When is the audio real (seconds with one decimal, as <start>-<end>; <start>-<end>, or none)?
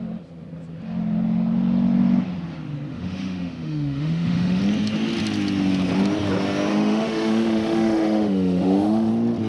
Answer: 0.0-2.9; 4.6-6.7; 9.1-9.5